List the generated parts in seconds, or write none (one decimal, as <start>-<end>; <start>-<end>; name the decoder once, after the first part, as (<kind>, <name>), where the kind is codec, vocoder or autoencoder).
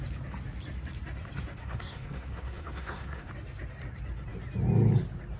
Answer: 1.6-3.3 (codec, SNAC)